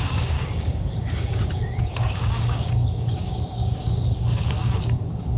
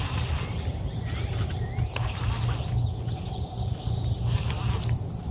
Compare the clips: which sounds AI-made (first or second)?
first